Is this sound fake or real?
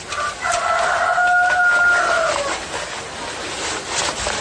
real